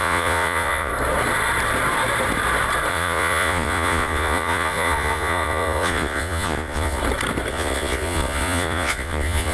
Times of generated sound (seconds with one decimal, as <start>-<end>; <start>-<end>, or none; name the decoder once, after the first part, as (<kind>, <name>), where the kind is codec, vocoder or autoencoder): 0.0-0.9 (vocoder, Vocos); 2.9-7.0; 7.5-9.5